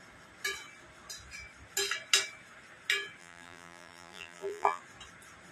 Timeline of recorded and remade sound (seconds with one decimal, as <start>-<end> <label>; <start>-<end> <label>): 0.0-3.2 recorded; 3.2-4.8 remade; 4.8-5.5 recorded